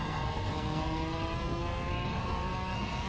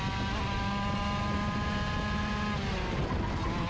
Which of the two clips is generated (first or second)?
first